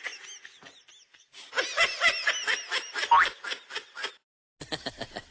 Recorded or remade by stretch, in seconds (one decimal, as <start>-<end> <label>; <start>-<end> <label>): 0.0-5.3 recorded